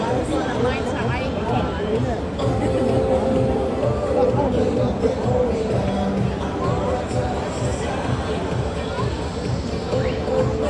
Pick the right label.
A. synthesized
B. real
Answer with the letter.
B